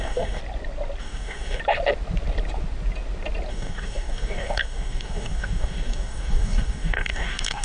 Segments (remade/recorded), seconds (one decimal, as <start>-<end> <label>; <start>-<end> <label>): 0.0-0.4 remade; 0.4-1.0 recorded; 1.0-1.6 remade; 1.6-3.5 recorded; 3.5-7.6 remade